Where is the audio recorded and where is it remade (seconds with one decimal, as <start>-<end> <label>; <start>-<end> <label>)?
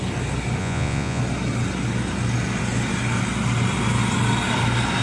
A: 0.0-0.6 recorded; 0.6-1.2 remade; 1.2-5.0 recorded